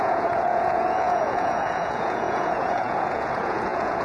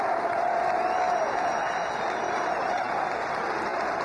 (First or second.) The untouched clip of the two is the second